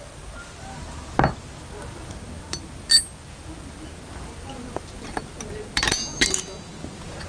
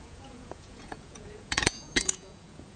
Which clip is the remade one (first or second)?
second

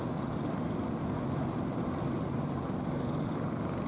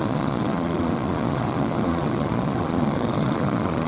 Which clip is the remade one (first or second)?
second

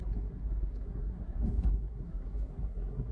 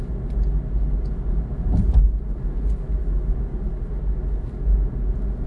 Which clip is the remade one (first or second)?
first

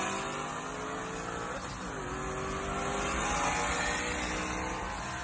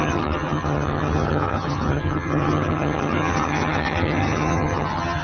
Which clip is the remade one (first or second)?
second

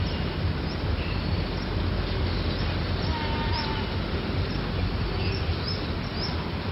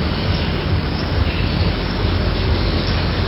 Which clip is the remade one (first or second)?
second